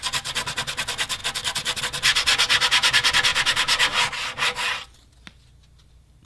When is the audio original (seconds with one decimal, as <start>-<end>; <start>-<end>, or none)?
0.0-6.3